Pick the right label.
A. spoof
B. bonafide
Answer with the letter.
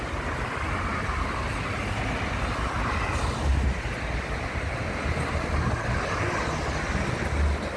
B